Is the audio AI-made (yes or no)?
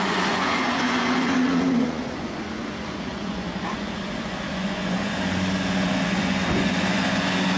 yes